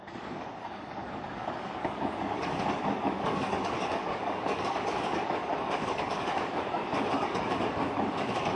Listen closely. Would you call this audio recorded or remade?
remade